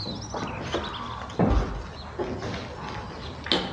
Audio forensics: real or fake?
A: real